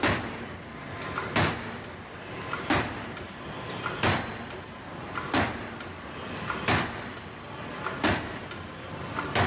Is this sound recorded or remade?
recorded